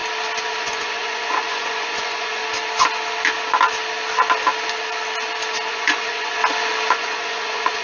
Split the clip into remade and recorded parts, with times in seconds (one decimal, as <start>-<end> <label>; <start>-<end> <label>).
0.0-0.6 recorded; 0.6-2.4 remade; 2.4-5.7 recorded; 5.7-6.4 remade; 6.4-6.9 recorded; 6.9-7.8 remade